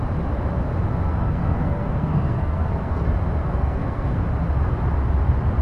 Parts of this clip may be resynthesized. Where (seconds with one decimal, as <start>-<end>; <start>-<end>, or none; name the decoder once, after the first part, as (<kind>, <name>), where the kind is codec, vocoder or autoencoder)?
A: 1.1-3.0 (codec, SNAC); 3.4-4.2